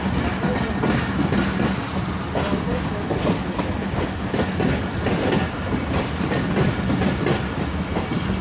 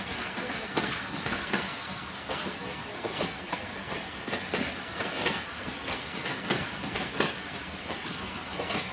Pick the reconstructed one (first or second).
second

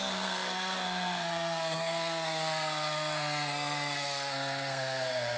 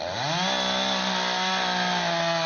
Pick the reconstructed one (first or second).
first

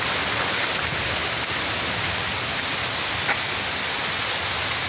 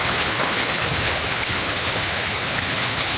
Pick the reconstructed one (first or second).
second